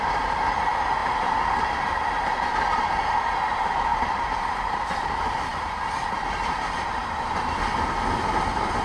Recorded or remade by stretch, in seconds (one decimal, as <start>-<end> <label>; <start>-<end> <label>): 0.0-1.0 recorded; 1.0-2.1 remade; 2.1-3.9 recorded; 3.9-7.6 remade; 7.6-8.8 recorded